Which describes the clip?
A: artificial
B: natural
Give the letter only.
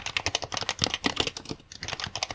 B